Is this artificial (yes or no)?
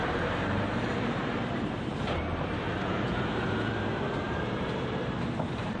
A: yes